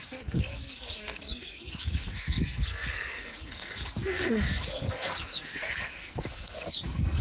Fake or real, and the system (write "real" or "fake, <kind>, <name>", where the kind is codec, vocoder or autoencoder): fake, codec, SNAC